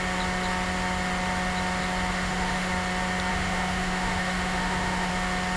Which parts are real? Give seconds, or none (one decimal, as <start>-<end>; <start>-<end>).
0.0-2.1; 2.7-3.3; 5.1-5.6